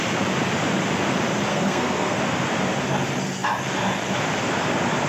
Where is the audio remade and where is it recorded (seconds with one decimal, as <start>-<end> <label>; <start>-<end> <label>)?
0.0-1.5 recorded; 1.5-2.2 remade; 2.2-5.1 recorded